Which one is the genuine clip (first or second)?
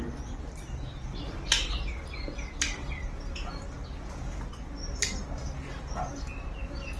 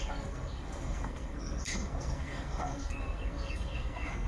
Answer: first